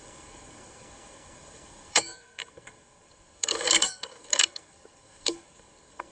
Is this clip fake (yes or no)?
yes